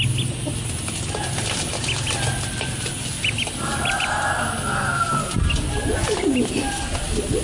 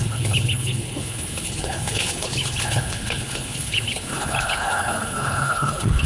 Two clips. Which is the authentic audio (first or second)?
first